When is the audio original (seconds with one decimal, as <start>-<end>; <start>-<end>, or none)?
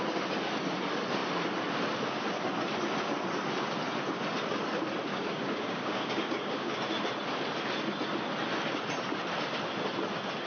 0.0-5.1; 6.7-10.5